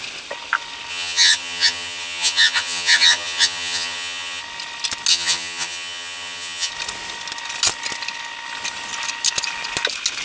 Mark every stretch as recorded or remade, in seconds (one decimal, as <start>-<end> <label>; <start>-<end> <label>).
0.0-0.9 recorded; 0.9-4.4 remade; 4.4-5.1 recorded; 5.1-6.7 remade; 6.7-10.2 recorded